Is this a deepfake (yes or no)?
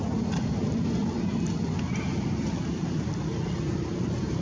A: no